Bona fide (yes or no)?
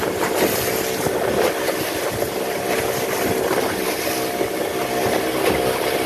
yes